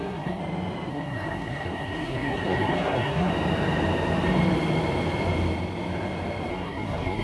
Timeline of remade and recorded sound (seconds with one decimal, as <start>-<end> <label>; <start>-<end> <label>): 0.0-0.4 remade; 0.4-0.9 recorded; 0.9-3.3 remade; 3.3-6.5 recorded; 6.5-7.2 remade